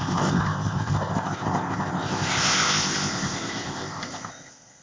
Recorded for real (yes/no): no